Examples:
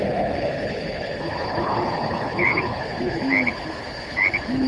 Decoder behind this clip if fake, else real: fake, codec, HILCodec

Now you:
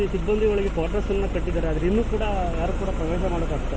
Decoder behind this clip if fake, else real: real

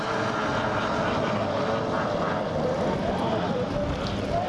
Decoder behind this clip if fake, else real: real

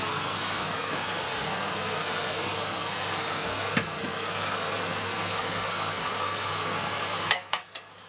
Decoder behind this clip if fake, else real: fake, codec, SNAC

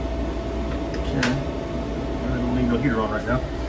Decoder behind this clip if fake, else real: real